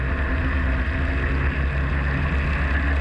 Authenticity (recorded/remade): recorded